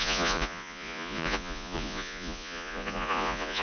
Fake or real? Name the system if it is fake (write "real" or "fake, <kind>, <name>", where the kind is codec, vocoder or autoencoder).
fake, vocoder, Vocos